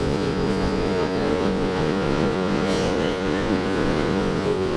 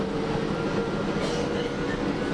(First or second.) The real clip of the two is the second